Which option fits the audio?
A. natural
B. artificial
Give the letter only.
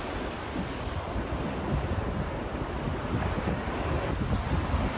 A